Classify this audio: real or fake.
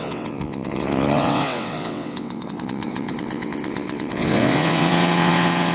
fake